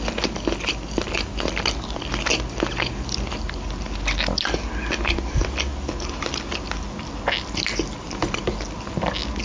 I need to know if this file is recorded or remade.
recorded